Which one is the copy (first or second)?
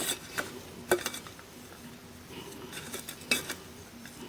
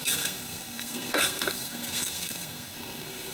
second